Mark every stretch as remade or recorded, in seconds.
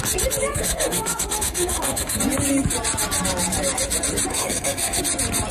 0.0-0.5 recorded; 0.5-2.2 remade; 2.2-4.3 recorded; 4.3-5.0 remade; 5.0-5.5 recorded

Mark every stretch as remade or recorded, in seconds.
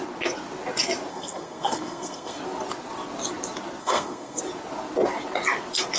0.0-1.1 recorded; 1.1-2.4 remade; 2.4-3.8 recorded; 3.8-4.4 remade; 4.4-6.0 recorded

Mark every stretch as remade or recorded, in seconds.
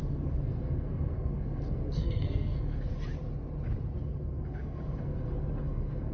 0.0-2.9 remade; 2.9-4.0 recorded; 4.0-6.1 remade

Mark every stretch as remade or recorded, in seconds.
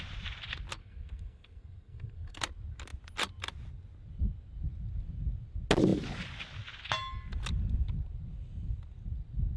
0.0-0.8 recorded; 0.8-2.4 remade; 2.4-9.6 recorded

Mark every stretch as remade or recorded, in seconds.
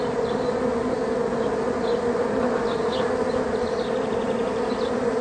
0.0-5.2 recorded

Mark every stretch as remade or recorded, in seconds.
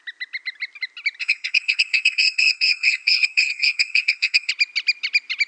0.0-1.2 recorded; 1.2-4.5 remade; 4.5-5.5 recorded